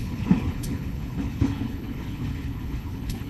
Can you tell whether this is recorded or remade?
remade